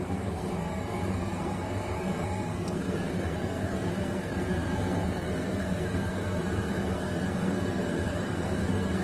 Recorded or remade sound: remade